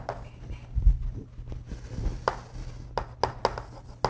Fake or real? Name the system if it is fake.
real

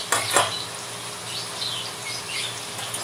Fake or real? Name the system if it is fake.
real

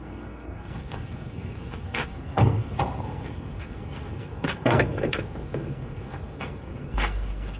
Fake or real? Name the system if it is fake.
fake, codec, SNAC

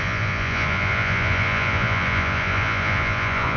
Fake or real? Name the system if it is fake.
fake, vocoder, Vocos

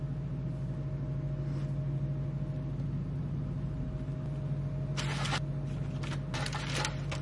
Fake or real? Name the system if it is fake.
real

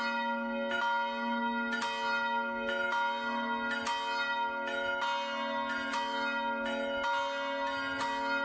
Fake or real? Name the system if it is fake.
real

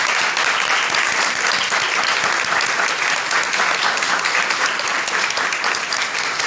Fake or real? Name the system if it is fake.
real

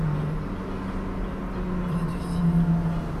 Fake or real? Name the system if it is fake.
real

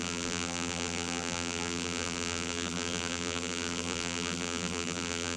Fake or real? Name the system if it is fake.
fake, vocoder, BigVGAN v2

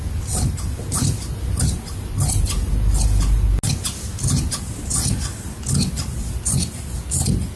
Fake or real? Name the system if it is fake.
real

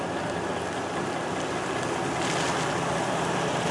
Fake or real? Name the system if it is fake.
real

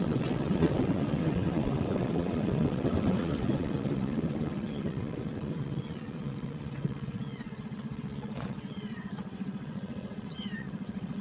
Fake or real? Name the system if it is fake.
fake, vocoder, WaveNeXt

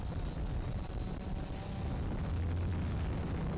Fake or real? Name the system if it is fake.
real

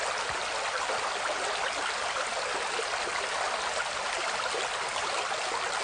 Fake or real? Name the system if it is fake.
real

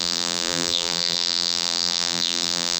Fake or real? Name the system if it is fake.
fake, vocoder, BigVGAN v2